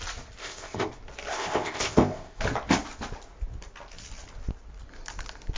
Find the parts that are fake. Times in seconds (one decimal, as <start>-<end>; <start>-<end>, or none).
0.4-0.9; 1.3-2.4

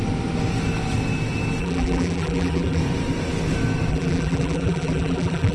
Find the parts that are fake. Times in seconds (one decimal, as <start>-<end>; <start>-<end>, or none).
1.6-2.8; 3.9-5.5

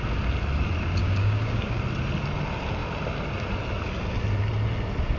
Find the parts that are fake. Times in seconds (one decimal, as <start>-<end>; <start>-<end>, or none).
1.0-1.8

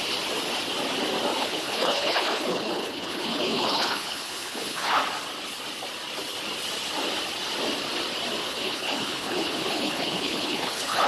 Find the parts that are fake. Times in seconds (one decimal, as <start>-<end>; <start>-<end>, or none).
1.4-5.0; 8.4-11.1

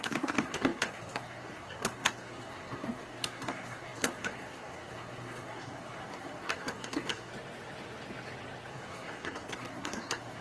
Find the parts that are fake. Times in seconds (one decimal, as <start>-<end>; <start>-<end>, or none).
0.0-7.3; 8.7-10.4

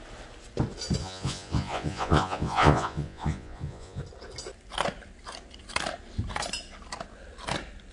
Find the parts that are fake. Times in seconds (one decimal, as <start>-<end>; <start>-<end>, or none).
1.0-4.0

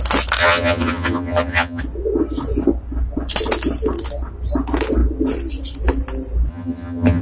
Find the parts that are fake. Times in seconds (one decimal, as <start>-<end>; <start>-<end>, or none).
0.4-1.8; 6.5-7.2

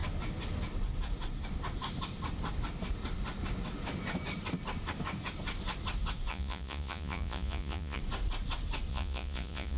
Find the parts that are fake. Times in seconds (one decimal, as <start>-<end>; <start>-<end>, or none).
6.3-8.0; 8.9-9.8